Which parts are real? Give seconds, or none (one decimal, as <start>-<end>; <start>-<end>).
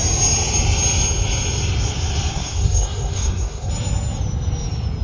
0.0-2.3; 3.7-5.0